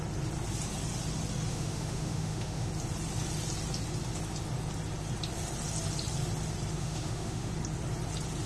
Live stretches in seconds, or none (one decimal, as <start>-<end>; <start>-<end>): 0.0-1.5; 2.7-6.8; 7.5-8.5